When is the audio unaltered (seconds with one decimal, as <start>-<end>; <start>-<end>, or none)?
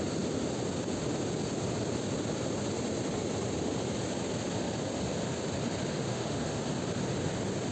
0.0-5.9; 6.6-7.7